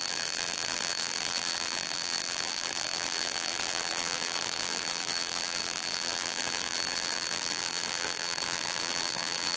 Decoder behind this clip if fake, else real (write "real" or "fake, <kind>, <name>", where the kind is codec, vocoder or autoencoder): fake, vocoder, BigVGAN v2